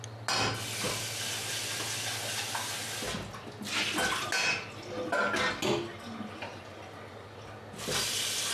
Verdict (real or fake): real